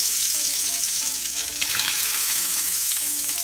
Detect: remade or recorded remade